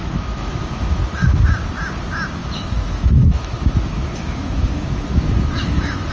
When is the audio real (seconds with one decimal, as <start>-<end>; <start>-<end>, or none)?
1.4-2.4